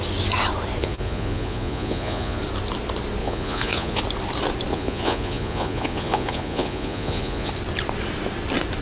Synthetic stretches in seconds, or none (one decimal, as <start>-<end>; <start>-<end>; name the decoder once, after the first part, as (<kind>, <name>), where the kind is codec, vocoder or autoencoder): 0.8-2.4 (vocoder, Vocos); 3.2-4.0; 4.7-7.5